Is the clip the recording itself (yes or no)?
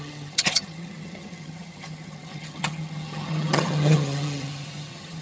no